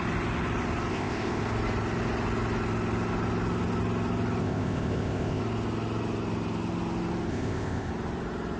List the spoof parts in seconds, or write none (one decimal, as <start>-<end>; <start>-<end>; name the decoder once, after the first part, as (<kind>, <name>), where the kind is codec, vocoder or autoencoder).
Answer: 0.9-1.4 (codec, ZipCodec); 4.4-5.4; 7.3-7.9